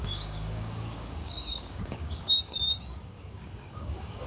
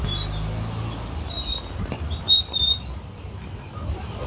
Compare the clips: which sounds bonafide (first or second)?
second